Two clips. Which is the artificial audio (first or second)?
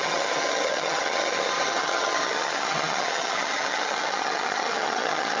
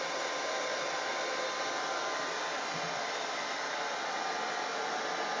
first